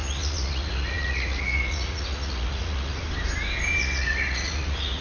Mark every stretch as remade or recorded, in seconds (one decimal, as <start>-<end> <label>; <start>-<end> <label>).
0.0-3.0 remade; 3.0-3.8 recorded; 3.8-5.0 remade